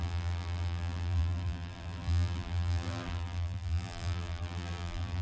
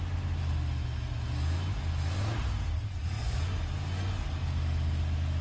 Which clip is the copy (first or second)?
first